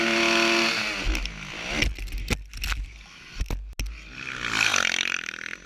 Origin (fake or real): real